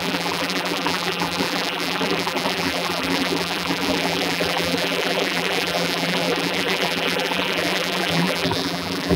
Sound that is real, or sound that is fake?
fake